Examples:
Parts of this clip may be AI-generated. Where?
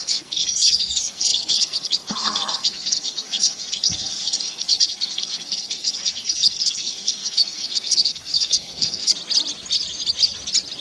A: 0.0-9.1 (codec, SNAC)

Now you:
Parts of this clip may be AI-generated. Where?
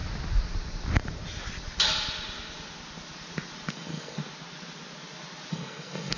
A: 3.7-4.2 (codec, SNAC); 5.5-6.2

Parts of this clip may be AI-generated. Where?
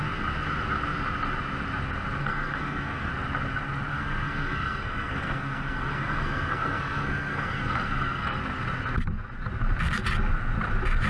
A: 2.2-3.1 (codec, SNAC); 3.9-8.4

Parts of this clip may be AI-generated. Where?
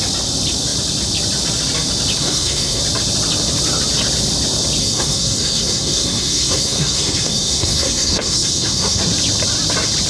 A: 2.2-2.8 (codec, SNAC); 4.8-9.0